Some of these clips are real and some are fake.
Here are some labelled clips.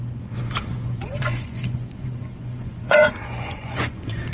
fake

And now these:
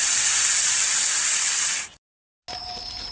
real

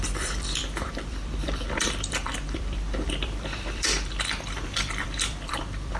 fake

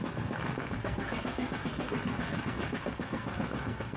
fake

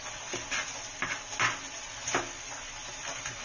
real